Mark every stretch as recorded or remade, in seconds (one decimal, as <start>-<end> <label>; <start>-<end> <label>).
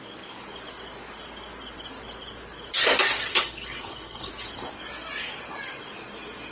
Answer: 0.0-3.3 recorded; 3.3-4.3 remade; 4.3-6.5 recorded